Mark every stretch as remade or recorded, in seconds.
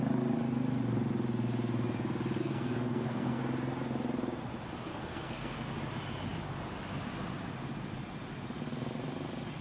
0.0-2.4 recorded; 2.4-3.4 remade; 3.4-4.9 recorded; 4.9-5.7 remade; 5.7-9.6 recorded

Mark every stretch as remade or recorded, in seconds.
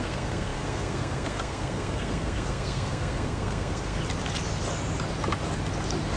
0.0-4.0 remade; 4.0-6.2 recorded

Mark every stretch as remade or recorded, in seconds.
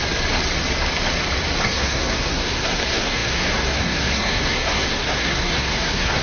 0.0-1.6 recorded; 1.6-6.2 remade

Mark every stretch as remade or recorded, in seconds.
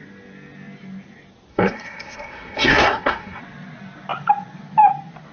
0.0-1.5 recorded; 1.5-3.4 remade; 3.4-5.3 recorded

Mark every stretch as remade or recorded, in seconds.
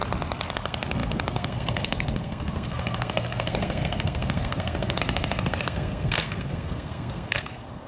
0.0-0.5 recorded; 0.5-7.9 remade